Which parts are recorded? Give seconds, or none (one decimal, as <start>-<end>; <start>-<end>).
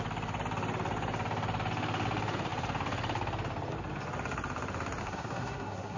0.0-5.0